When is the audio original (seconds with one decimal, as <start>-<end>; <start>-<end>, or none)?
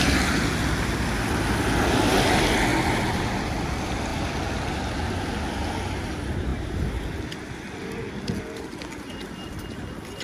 0.0-10.2